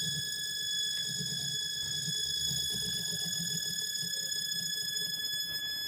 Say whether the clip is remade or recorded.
remade